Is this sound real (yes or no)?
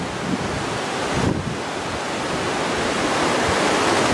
yes